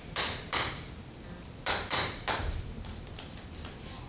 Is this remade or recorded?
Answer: remade